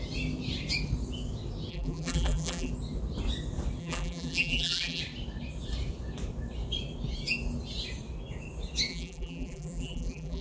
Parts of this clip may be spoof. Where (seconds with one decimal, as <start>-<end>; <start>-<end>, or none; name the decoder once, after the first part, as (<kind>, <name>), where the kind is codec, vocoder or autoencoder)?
1.7-2.7 (vocoder, BigVGAN v2); 3.8-5.0; 8.9-10.4